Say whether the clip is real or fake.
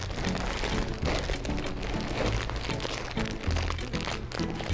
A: real